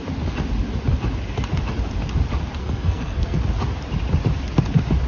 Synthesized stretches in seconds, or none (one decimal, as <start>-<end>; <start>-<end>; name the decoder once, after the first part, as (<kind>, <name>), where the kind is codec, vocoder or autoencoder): 2.6-3.4 (codec, SNAC)